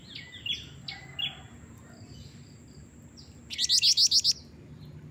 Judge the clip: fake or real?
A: real